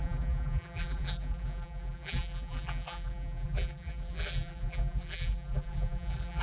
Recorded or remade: remade